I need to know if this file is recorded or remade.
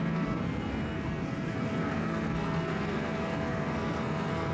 remade